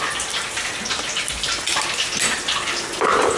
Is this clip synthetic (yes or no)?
no